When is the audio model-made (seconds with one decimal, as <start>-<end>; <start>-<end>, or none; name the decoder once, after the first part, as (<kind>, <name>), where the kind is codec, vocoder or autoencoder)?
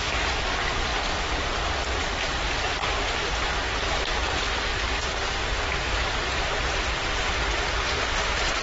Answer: none